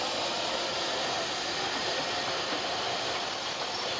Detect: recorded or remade recorded